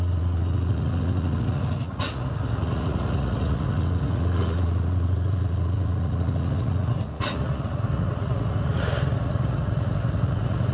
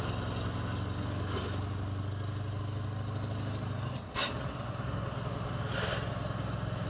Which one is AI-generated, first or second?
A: first